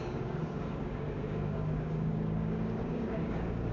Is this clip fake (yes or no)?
yes